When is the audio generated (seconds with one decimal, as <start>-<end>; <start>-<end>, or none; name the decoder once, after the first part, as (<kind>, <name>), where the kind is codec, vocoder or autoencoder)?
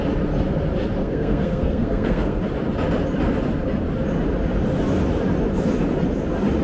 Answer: 1.0-2.4 (codec, SNAC)